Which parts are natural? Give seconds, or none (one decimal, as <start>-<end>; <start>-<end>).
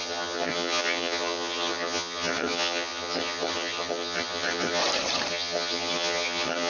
4.8-5.3